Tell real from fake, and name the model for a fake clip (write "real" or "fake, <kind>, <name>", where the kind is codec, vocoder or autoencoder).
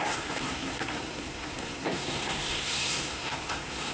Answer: fake, codec, SNAC